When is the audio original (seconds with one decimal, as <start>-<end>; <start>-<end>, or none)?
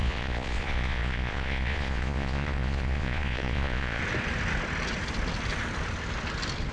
4.0-6.7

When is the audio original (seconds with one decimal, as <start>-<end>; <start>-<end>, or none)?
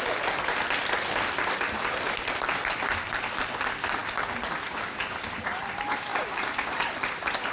0.0-6.1; 6.7-7.5